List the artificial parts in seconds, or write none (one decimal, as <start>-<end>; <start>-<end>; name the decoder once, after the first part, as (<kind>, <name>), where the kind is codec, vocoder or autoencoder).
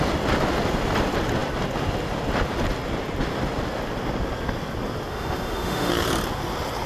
5.1-5.9 (autoencoder, DAC-VAE)